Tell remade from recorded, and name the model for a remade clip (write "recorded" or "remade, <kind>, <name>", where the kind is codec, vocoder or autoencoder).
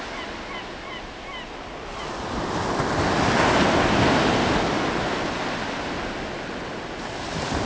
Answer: recorded